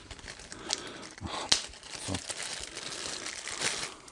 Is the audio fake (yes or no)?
no